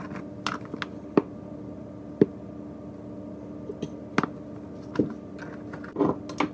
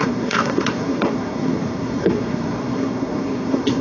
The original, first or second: first